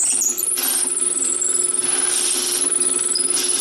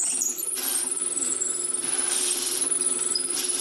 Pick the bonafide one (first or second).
first